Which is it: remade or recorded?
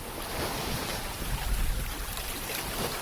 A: recorded